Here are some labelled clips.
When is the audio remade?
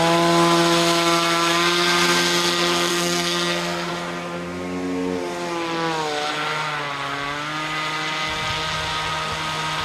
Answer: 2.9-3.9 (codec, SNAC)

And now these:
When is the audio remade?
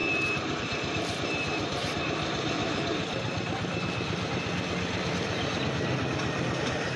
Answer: 0.0-2.6 (vocoder, BigVGAN v2); 6.6-7.0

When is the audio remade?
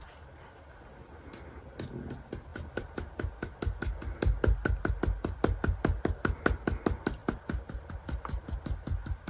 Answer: none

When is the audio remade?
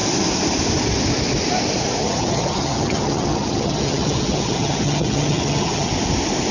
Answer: 2.0-5.9 (vocoder, HiFi-GAN)